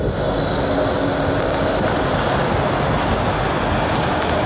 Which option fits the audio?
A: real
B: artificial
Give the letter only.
A